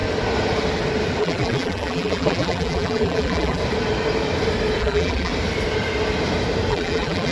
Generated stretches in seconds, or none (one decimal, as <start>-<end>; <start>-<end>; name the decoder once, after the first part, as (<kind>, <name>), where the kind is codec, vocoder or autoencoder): 1.2-3.6 (vocoder, BigVGAN v2); 4.8-5.3; 6.7-7.3